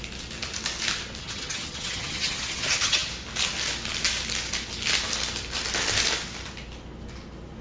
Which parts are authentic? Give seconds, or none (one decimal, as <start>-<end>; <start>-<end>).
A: 0.0-1.2; 3.1-7.6